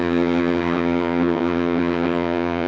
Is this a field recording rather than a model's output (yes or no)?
no